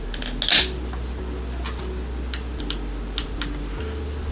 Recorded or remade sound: recorded